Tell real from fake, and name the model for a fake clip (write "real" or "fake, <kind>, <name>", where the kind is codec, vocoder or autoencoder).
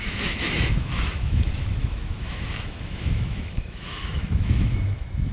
fake, autoencoder, DAC-VAE